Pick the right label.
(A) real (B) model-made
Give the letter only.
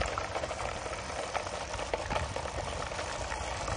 A